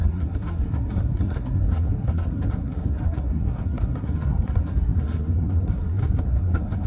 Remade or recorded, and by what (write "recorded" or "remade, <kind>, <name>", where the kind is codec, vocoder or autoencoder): remade, codec, SNAC